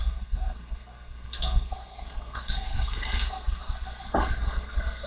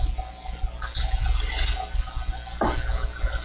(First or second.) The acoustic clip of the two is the second